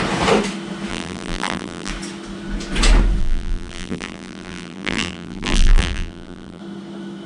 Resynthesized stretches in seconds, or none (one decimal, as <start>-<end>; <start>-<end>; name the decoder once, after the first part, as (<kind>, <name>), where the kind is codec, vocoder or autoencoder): 0.9-1.9 (vocoder, BigVGAN v2); 3.2-6.6